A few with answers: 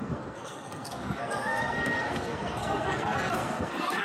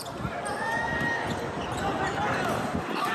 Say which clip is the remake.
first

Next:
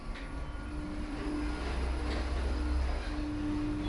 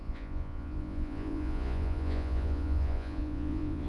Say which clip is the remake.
second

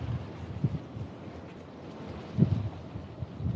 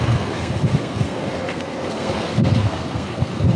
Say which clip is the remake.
second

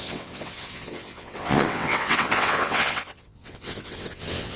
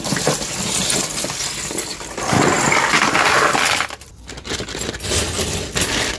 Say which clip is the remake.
first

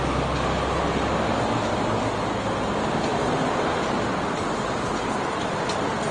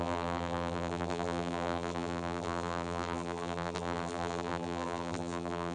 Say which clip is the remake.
second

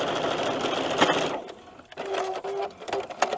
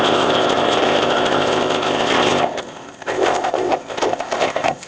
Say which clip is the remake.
second